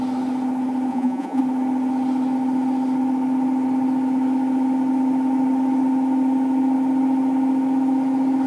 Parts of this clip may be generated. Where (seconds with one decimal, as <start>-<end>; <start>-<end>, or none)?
0.9-1.4